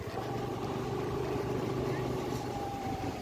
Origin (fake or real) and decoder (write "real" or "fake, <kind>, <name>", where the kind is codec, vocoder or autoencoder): fake, vocoder, BigVGAN v2